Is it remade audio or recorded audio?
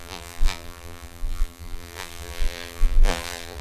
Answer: remade